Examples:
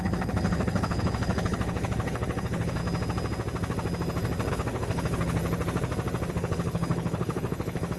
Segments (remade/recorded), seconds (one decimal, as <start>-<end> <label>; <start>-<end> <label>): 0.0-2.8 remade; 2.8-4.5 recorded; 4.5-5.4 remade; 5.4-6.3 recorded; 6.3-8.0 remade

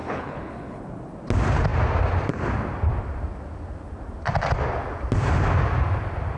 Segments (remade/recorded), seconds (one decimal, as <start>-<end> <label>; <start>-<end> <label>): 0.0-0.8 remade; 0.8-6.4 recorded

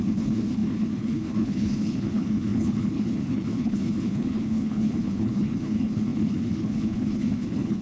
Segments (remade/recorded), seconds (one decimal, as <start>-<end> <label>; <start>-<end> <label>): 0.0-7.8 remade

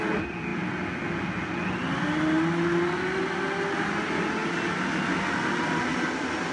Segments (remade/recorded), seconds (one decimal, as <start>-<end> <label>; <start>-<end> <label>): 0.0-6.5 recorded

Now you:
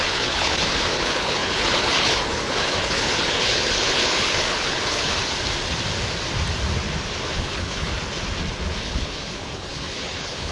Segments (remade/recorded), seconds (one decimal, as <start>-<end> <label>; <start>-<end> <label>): 0.0-5.2 remade; 5.2-7.2 recorded; 7.2-7.9 remade; 7.9-8.8 recorded; 8.8-10.5 remade

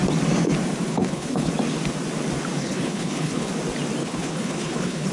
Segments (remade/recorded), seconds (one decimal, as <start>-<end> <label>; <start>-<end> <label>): 0.0-0.9 recorded; 0.9-1.5 remade; 1.5-2.6 recorded; 2.6-3.5 remade; 3.5-4.0 recorded; 4.0-5.1 remade